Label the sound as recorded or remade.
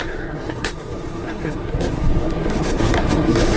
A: remade